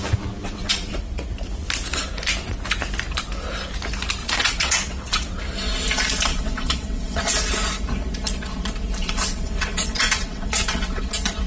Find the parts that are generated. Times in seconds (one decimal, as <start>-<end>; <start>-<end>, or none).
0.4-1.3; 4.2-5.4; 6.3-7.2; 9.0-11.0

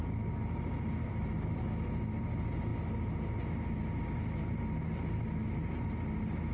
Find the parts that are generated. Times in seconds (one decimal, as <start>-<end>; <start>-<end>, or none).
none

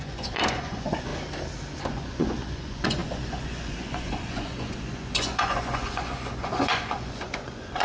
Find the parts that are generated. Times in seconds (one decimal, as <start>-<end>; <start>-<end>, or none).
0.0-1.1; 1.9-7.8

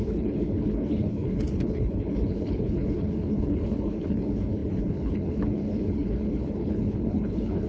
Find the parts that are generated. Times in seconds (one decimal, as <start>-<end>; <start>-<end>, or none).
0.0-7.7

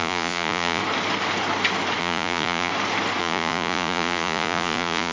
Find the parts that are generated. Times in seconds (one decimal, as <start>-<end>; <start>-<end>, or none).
0.0-0.8; 2.0-2.7; 3.2-5.1